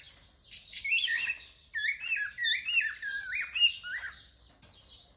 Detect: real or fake real